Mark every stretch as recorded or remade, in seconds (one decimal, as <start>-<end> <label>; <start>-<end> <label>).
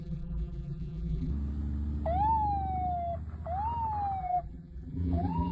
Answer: 0.0-1.3 remade; 1.3-4.2 recorded; 4.2-5.5 remade